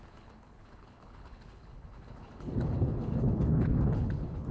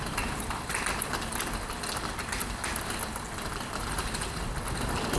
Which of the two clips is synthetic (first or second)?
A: first